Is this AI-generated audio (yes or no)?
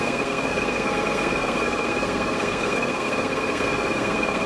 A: yes